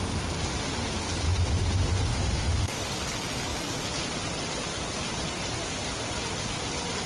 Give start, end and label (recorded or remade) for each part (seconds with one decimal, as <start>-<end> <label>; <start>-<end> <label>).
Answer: 0.0-2.1 recorded; 2.1-2.8 remade; 2.8-7.1 recorded